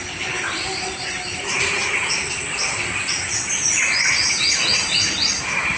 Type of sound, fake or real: real